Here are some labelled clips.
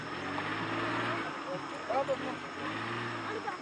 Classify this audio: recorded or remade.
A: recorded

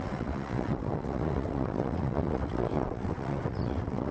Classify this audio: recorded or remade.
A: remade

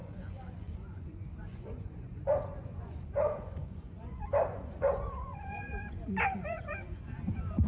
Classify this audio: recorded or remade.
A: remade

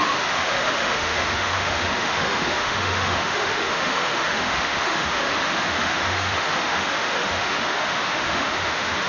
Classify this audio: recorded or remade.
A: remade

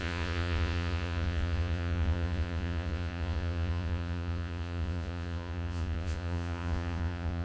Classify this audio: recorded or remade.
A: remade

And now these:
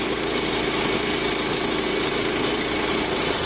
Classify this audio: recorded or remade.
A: recorded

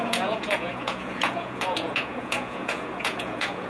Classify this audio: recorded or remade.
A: remade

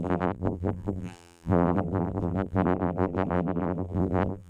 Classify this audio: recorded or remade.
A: remade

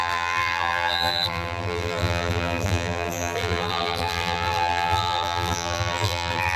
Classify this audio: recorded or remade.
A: remade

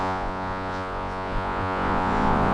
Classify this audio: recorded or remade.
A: remade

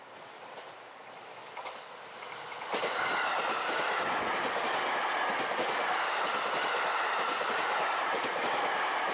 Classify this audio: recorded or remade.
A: recorded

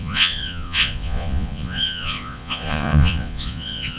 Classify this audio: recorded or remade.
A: remade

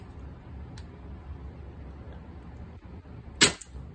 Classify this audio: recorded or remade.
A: recorded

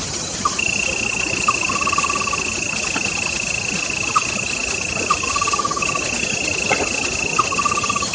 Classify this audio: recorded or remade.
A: recorded